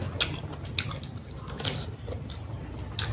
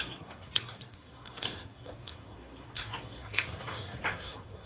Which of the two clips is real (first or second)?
first